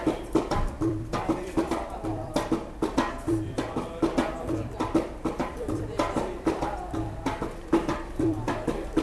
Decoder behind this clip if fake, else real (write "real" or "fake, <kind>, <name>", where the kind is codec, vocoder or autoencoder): fake, vocoder, BigVGAN v2